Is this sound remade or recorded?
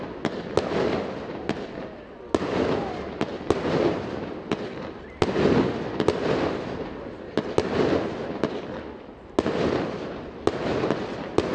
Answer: recorded